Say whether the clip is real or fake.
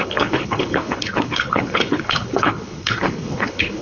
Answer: fake